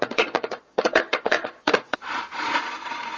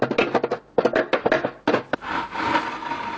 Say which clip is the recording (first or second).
second